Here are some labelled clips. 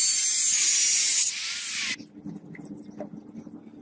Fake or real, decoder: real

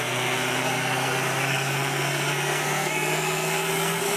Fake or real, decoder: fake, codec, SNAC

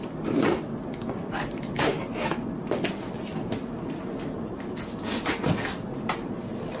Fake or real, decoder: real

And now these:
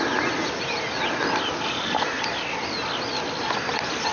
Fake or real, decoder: real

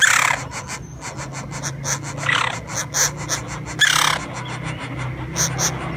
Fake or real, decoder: real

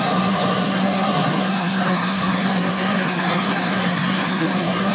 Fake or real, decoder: fake, codec, SNAC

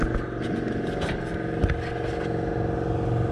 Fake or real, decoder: real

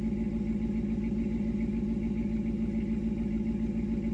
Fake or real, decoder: real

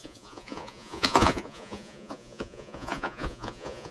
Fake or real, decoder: fake, vocoder, Vocos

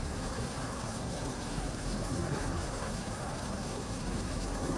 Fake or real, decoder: fake, codec, SNAC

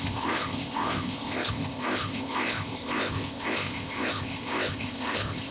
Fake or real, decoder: fake, codec, ZipCodec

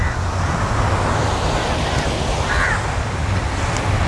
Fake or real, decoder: real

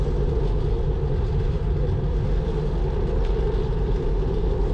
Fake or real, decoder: real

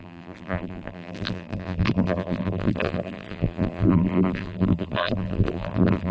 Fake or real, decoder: fake, vocoder, BigVGAN v2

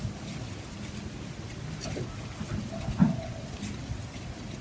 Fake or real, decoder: real